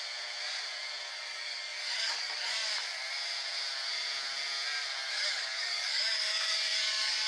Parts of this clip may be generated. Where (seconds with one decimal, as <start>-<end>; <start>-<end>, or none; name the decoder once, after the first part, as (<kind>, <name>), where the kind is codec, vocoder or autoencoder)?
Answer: 1.1-2.7 (codec, DAC); 5.0-7.3

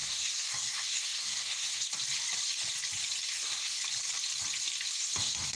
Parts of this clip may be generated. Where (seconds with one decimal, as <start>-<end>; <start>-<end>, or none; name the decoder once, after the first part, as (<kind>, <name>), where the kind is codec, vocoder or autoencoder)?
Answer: 0.0-1.9 (codec, SNAC); 3.3-3.8; 4.9-5.6

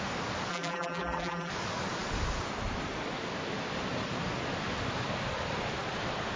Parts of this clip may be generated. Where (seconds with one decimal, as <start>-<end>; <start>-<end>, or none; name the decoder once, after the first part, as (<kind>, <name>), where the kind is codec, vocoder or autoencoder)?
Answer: 0.5-1.5 (vocoder, BigVGAN v2)

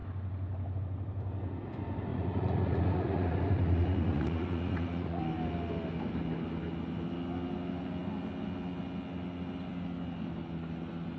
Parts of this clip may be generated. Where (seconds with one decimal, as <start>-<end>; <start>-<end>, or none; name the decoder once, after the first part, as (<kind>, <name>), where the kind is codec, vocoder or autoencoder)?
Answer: 2.1-5.2 (vocoder, Vocos)

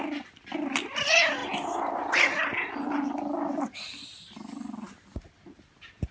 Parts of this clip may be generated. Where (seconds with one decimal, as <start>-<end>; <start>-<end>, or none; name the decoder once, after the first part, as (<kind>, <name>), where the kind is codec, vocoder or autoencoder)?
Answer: none

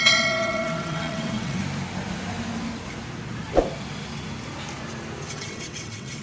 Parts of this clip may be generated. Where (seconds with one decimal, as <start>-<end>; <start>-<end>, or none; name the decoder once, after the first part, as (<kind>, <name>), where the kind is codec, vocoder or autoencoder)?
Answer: 0.0-1.6 (vocoder, WaveNeXt); 5.3-6.2

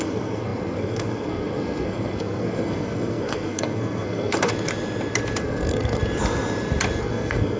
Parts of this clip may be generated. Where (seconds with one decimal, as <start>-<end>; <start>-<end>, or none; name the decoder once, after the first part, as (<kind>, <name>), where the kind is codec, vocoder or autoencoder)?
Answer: 0.0-4.5 (codec, SNAC); 5.4-6.0; 7.0-7.6